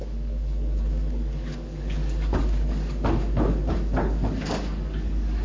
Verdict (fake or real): fake